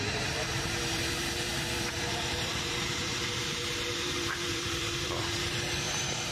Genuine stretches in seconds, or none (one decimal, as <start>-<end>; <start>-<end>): none